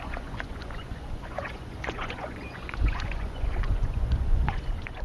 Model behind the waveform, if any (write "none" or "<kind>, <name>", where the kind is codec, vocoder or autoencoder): vocoder, Vocos